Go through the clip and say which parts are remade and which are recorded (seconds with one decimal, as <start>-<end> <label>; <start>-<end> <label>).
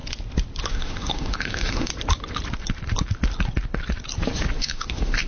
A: 0.0-0.7 recorded; 0.7-1.9 remade; 1.9-4.6 recorded; 4.6-5.3 remade